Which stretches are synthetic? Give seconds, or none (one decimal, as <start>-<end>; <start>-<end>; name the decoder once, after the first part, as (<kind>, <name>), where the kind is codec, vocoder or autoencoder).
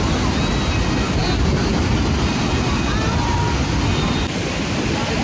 none